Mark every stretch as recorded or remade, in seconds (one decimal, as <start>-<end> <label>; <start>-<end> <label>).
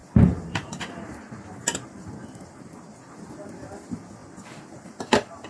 0.0-4.2 recorded; 4.2-5.5 remade